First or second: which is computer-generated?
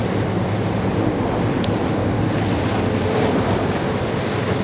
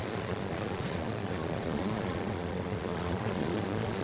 second